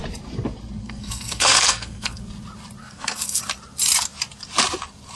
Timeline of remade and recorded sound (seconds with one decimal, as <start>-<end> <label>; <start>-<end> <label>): 0.0-0.8 recorded; 0.8-2.2 remade; 2.2-2.8 recorded; 2.8-3.4 remade; 3.4-5.2 recorded